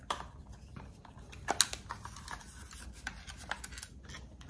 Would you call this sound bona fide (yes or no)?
yes